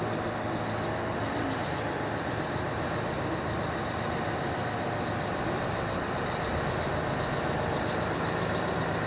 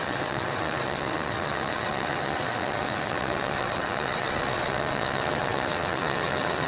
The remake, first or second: second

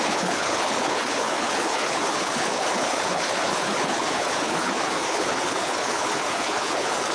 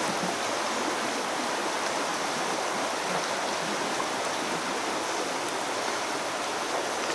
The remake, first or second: first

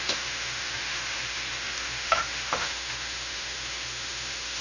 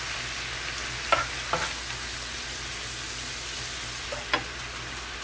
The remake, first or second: first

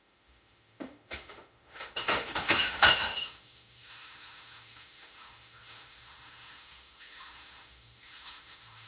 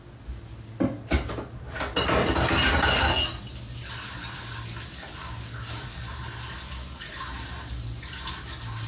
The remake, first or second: first